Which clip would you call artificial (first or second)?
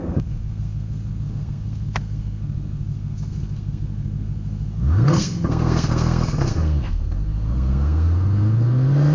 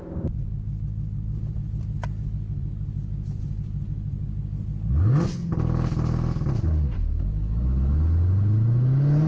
first